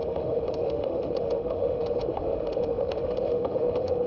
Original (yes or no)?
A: no